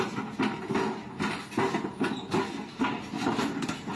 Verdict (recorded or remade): recorded